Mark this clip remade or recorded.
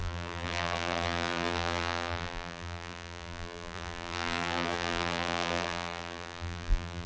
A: remade